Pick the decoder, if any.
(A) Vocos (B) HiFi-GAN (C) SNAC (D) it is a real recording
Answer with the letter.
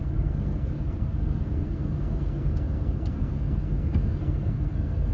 C